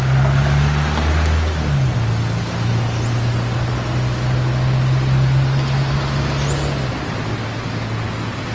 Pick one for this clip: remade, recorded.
recorded